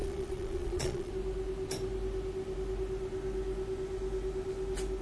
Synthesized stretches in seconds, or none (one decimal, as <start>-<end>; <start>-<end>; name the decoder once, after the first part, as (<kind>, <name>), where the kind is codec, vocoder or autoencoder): 0.0-1.1 (vocoder, Vocos)